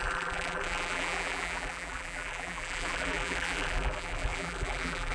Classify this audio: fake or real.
fake